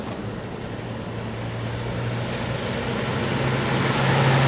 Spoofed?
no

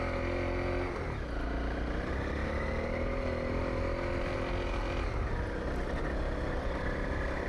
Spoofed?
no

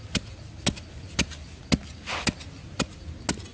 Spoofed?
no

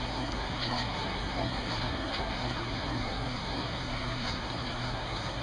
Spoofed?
yes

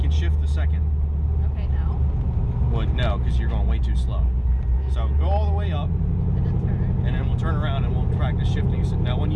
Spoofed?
no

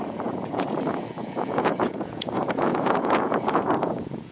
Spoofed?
yes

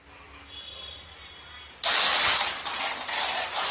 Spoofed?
no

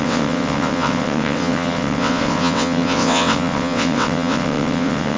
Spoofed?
yes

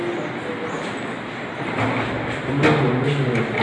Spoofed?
no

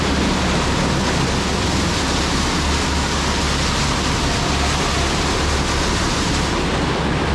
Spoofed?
no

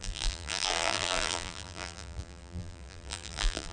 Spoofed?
yes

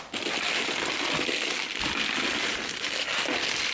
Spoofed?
no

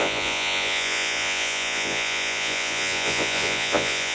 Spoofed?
yes